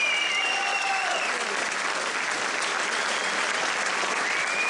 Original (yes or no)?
yes